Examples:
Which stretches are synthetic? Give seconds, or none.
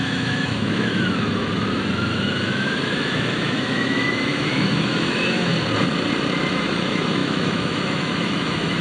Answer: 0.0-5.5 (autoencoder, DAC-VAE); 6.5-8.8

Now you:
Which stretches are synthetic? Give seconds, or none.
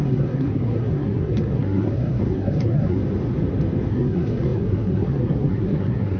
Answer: 0.0-3.0 (codec, SNAC); 3.9-6.2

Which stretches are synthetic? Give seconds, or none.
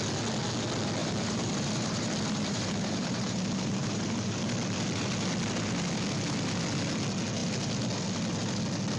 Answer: 1.0-4.4 (vocoder, BigVGAN v2)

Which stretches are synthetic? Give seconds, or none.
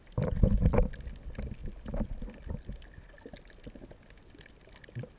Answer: 1.6-3.5 (vocoder, BigVGAN v2)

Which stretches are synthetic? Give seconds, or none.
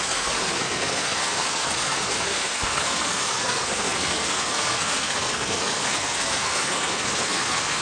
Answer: 0.0-7.8 (codec, SNAC)